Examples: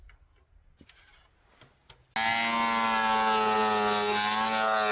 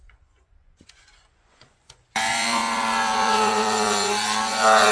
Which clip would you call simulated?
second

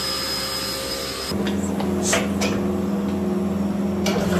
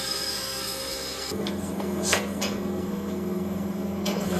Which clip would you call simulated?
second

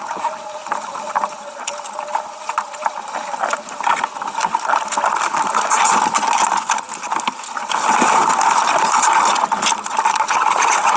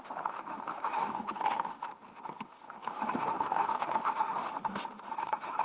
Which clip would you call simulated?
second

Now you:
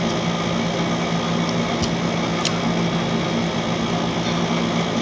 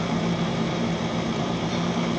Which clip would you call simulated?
second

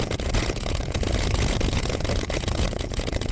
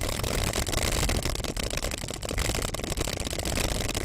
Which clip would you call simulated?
first